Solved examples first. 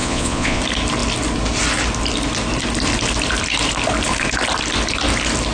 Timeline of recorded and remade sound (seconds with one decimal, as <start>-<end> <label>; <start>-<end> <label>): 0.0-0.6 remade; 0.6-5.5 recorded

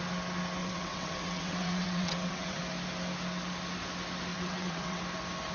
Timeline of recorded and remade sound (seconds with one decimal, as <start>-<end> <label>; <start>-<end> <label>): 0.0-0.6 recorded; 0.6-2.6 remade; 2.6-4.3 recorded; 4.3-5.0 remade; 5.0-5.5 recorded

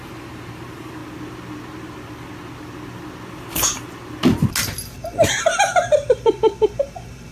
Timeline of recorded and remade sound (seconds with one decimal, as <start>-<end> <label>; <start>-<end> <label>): 0.0-1.0 remade; 1.0-5.4 recorded; 5.4-7.3 remade

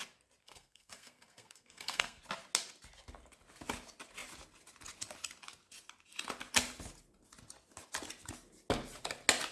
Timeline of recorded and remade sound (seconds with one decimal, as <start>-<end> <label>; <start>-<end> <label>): 0.0-0.4 recorded; 0.4-2.2 remade; 2.2-9.5 recorded

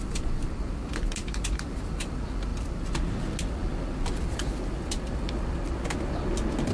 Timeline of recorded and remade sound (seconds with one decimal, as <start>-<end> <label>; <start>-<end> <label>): 0.0-1.2 recorded; 1.2-1.8 remade; 1.8-2.5 recorded; 2.5-3.2 remade; 3.2-6.7 recorded

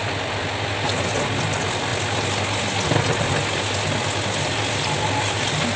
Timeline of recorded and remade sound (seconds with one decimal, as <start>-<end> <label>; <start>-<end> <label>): 0.0-5.8 recorded

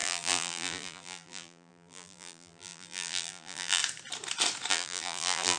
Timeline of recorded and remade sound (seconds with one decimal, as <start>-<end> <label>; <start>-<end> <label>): 0.0-3.8 remade; 3.8-4.7 recorded; 4.7-5.6 remade

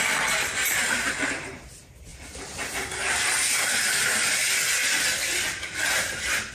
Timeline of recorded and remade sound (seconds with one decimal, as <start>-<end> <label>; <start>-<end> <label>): 0.0-0.5 recorded; 0.5-1.1 remade; 1.1-2.1 recorded; 2.1-4.4 remade; 4.4-6.5 recorded